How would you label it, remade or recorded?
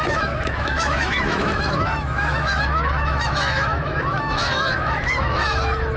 remade